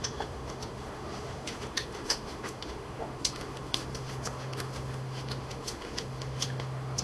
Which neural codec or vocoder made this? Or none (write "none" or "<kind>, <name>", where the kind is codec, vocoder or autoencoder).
autoencoder, DAC-VAE